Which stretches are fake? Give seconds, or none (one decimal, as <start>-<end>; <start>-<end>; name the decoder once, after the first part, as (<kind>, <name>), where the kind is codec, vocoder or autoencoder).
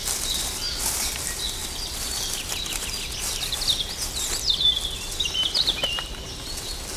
none